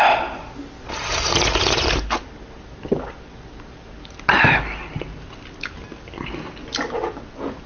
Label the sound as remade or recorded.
recorded